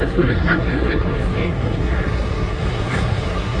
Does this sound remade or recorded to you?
remade